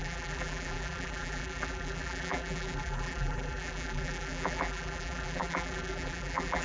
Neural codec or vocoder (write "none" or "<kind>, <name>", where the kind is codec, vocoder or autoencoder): vocoder, BigVGAN v2